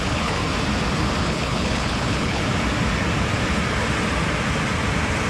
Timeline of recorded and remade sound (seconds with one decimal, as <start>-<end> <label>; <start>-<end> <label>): 0.0-0.4 remade; 0.4-1.2 recorded; 1.2-2.4 remade; 2.4-5.3 recorded